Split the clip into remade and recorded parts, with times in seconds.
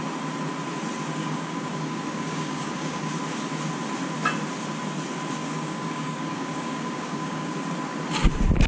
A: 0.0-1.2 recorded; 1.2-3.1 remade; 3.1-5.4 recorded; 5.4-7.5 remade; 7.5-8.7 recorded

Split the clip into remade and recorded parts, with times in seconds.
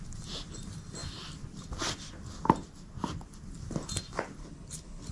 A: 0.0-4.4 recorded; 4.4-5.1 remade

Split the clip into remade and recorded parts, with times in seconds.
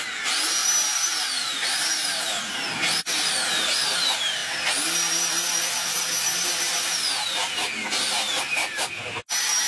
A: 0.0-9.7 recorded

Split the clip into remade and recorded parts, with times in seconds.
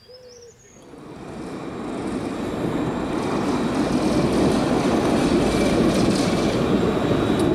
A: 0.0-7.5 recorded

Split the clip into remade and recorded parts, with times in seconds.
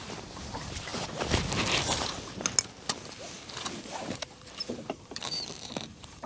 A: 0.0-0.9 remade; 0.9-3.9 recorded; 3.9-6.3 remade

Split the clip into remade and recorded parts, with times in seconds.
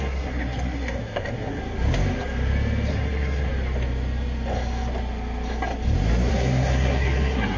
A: 0.0-1.6 remade; 1.6-2.9 recorded; 2.9-3.5 remade; 3.5-6.3 recorded; 6.3-7.6 remade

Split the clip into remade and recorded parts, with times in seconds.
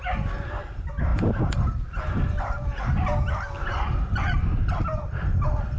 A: 0.0-5.8 recorded